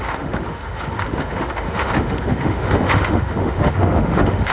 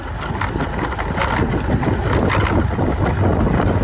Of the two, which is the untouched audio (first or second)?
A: second